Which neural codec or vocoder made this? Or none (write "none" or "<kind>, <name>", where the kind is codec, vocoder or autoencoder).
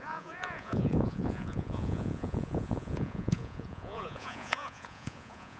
vocoder, Vocos